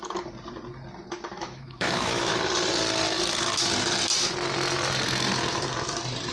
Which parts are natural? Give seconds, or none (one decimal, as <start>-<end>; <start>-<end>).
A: 0.0-1.3; 2.3-6.3